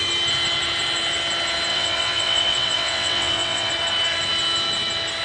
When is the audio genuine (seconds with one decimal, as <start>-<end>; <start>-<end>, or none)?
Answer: 0.0-1.7; 3.7-5.2